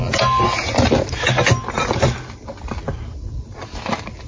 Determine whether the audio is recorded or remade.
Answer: recorded